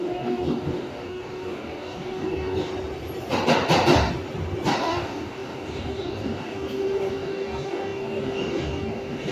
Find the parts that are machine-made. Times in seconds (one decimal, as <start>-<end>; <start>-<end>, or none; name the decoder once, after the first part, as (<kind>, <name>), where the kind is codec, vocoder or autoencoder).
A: 0.0-2.7 (codec, DAC); 4.8-9.3